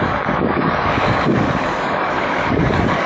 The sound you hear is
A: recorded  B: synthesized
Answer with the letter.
B